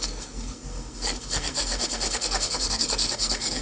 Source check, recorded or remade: remade